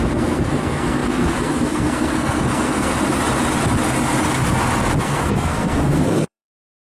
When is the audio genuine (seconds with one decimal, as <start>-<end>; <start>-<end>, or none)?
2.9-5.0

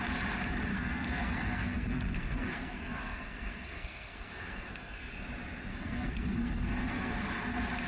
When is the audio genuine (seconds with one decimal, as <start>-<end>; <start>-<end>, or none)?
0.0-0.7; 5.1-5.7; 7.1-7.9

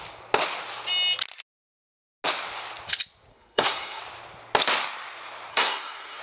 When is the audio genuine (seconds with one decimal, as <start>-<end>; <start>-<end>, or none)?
0.0-3.3; 4.0-5.5

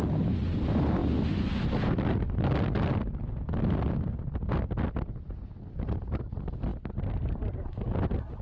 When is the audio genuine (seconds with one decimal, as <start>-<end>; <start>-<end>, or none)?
0.0-8.4

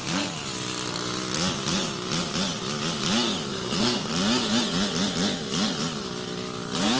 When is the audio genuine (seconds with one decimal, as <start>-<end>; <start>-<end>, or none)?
0.0-3.5; 4.1-7.0